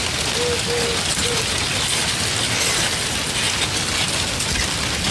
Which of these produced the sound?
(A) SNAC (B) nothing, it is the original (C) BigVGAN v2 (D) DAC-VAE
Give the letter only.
B